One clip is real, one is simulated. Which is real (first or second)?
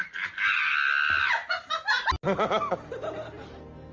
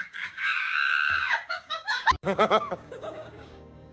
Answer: first